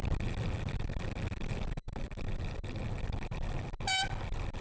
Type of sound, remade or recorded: recorded